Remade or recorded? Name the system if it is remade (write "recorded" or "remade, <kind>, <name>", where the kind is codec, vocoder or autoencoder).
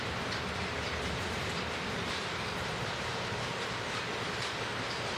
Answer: remade, vocoder, BigVGAN v2